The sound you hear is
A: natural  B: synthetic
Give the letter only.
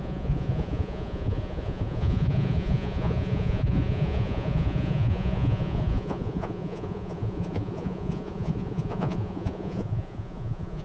B